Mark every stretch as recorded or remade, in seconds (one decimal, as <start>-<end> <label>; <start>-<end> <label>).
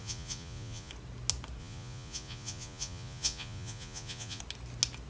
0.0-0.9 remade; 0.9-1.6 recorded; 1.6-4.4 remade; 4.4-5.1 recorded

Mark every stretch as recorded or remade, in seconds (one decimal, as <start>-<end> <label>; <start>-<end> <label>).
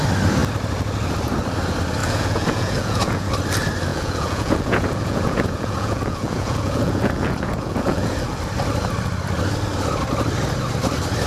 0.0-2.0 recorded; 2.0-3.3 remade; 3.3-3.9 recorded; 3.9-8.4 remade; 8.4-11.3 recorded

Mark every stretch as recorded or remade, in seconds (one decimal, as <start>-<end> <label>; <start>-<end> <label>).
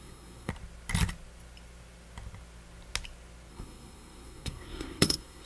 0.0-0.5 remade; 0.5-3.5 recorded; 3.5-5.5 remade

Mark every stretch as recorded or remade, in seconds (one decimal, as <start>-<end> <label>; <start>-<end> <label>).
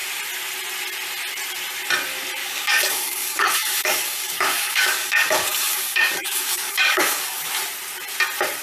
0.0-2.4 recorded; 2.4-7.5 remade; 7.5-8.6 recorded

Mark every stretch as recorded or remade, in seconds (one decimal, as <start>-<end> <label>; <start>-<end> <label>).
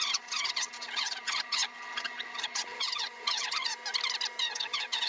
0.0-3.7 remade; 3.7-4.4 recorded; 4.4-5.1 remade